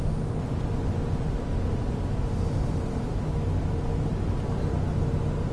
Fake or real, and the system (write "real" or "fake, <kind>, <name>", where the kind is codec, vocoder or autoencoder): real